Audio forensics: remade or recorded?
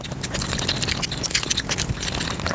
recorded